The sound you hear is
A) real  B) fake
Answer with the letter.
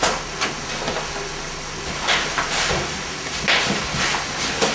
A